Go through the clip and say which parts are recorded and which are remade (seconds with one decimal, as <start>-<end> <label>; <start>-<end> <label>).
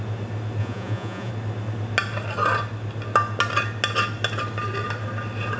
0.0-0.6 recorded; 0.6-1.3 remade; 1.3-5.6 recorded